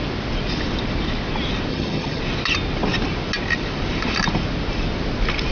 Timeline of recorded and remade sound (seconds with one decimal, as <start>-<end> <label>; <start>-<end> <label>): 0.0-1.7 recorded; 1.7-2.2 remade; 2.2-5.5 recorded